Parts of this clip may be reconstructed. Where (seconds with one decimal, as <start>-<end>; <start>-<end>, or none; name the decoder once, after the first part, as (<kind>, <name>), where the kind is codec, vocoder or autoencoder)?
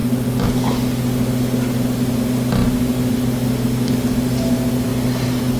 none